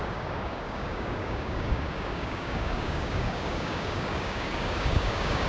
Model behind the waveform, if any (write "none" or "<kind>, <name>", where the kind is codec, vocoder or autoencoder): codec, DAC